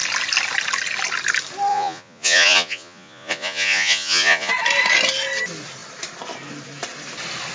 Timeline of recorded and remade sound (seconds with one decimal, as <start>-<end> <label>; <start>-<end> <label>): 0.0-1.7 recorded; 1.7-4.5 remade; 4.5-7.5 recorded